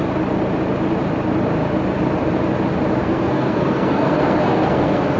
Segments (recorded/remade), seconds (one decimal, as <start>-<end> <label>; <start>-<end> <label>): 0.0-3.0 recorded; 3.0-5.2 remade